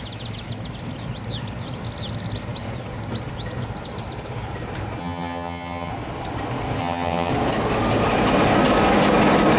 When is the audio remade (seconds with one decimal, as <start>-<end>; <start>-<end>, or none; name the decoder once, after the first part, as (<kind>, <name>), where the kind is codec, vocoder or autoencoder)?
5.0-5.9 (vocoder, HiFi-GAN); 6.8-7.3